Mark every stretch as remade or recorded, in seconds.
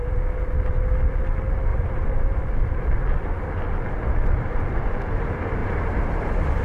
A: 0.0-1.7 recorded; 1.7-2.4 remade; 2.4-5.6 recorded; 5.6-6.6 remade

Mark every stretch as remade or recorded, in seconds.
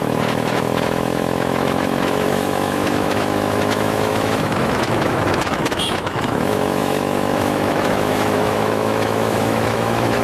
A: 0.0-10.2 remade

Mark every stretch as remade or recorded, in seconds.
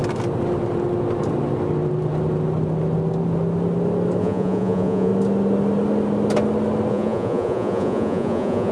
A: 0.0-4.2 recorded; 4.2-5.1 remade; 5.1-6.9 recorded; 6.9-8.7 remade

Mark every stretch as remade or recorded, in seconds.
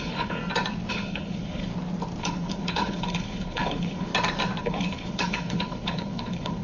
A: 0.0-0.4 remade; 0.4-0.9 recorded; 0.9-1.7 remade; 1.7-2.2 recorded; 2.2-4.1 remade; 4.1-4.6 recorded; 4.6-6.6 remade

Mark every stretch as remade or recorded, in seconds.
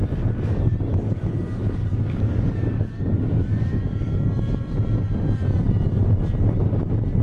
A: 0.0-0.9 recorded; 0.9-4.1 remade; 4.1-7.2 recorded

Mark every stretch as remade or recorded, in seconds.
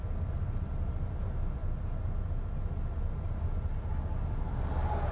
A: 0.0-5.1 recorded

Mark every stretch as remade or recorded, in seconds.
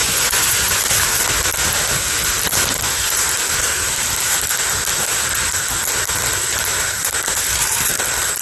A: 0.0-0.8 remade; 0.8-8.4 recorded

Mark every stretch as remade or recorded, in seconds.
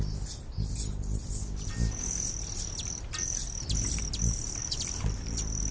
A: 0.0-5.7 recorded